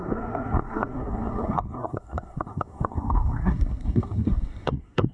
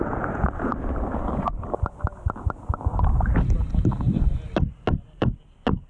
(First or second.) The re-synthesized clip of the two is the first